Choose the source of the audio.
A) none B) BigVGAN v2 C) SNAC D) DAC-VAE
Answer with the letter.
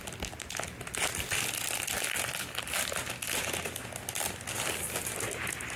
A